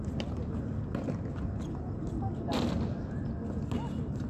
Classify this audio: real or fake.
real